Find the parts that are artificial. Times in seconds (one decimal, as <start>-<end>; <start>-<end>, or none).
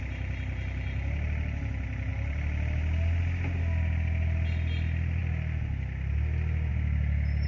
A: none